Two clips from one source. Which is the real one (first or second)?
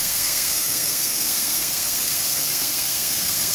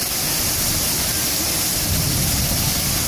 second